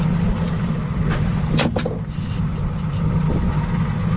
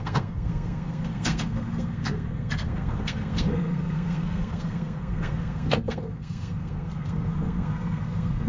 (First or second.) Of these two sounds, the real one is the first